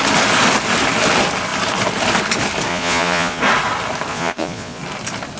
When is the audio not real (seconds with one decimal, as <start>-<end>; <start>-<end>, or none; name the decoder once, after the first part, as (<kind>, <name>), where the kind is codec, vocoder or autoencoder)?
2.7-3.4 (vocoder, Vocos); 4.1-4.8